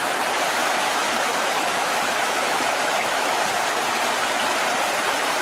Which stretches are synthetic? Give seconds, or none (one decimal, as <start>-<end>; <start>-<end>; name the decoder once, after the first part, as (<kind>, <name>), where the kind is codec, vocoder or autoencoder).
0.6-3.4 (autoencoder, DAC-VAE)